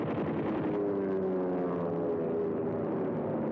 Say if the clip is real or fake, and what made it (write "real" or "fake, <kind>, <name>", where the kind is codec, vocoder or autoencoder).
real